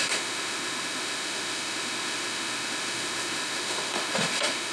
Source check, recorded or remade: remade